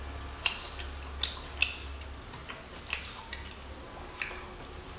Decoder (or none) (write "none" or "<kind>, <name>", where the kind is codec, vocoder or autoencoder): none